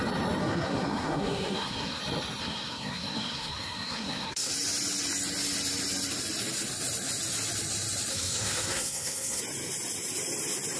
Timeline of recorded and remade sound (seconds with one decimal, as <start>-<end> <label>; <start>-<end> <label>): 0.0-0.4 recorded; 0.4-2.0 remade; 2.0-2.4 recorded; 2.4-4.5 remade; 4.5-8.1 recorded; 8.1-9.4 remade; 9.4-10.8 recorded

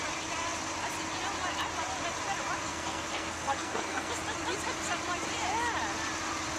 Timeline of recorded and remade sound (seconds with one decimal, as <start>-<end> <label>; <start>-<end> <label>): 0.0-2.7 recorded; 2.7-4.1 remade; 4.1-6.6 recorded

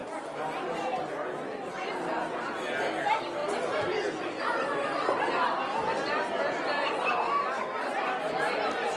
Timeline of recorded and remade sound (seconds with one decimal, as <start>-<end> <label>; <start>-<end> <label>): 0.0-9.0 recorded

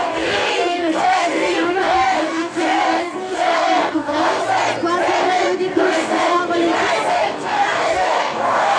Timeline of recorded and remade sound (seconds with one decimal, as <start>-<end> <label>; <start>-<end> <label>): 0.0-4.4 remade; 4.4-5.2 recorded; 5.2-6.4 remade; 6.4-7.1 recorded; 7.1-8.8 remade

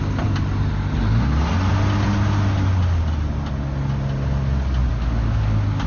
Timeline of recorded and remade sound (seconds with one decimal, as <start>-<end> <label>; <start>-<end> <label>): 0.0-4.9 recorded; 4.9-5.9 remade

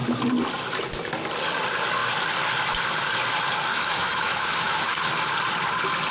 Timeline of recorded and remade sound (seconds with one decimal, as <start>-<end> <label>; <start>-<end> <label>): 0.0-3.7 recorded; 3.7-5.1 remade; 5.1-6.1 recorded